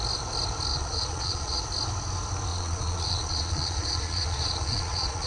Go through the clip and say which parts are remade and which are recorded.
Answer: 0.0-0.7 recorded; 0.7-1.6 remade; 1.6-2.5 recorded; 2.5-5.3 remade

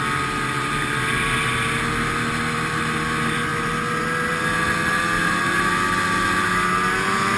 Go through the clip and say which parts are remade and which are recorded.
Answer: 0.0-7.4 recorded